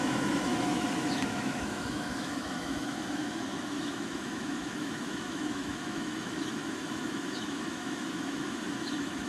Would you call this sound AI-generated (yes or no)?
yes